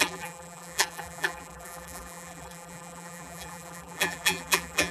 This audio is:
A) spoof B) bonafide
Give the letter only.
A